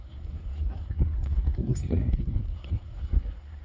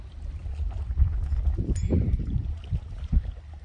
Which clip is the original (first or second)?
second